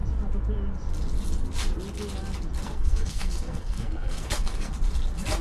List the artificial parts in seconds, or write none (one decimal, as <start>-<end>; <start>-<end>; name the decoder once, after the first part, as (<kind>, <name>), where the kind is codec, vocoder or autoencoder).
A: 2.6-4.7 (codec, SNAC)

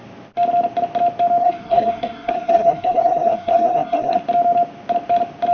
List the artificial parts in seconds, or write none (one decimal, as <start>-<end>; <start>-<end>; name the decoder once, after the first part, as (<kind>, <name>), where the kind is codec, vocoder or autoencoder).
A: 1.4-4.2 (codec, SNAC)

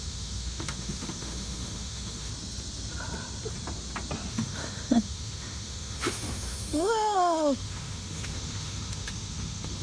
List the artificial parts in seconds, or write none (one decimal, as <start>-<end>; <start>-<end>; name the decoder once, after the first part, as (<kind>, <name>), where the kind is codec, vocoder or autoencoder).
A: 0.0-2.3 (autoencoder, DAC-VAE); 4.3-9.8

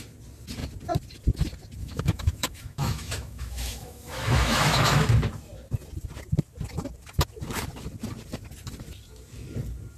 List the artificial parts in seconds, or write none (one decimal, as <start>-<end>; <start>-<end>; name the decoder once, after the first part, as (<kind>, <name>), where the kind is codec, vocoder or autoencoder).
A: 1.8-5.1 (autoencoder, DAC-VAE)